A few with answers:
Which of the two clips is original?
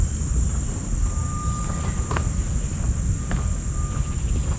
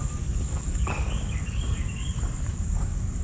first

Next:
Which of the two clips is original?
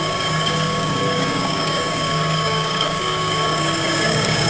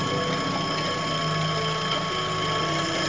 second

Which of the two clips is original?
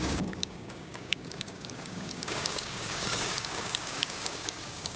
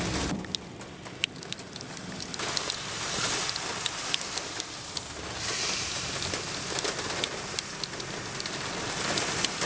second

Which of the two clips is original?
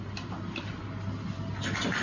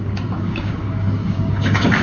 first